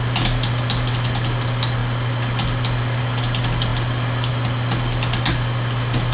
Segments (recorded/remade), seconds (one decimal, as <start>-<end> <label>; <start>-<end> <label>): 0.0-6.1 recorded